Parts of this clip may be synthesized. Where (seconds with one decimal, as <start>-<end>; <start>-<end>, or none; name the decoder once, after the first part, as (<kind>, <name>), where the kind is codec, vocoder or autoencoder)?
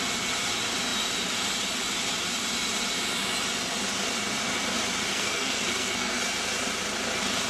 5.1-6.2 (codec, SNAC)